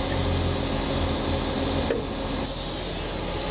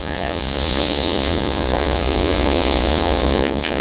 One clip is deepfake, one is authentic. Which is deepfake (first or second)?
second